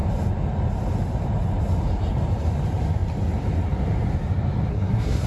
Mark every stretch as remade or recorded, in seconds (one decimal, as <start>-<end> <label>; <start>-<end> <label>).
0.0-4.7 recorded; 4.7-5.3 remade